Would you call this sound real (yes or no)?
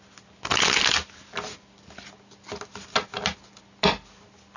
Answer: yes